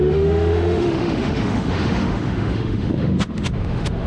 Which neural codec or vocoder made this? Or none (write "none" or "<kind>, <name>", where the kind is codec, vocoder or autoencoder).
autoencoder, DAC-VAE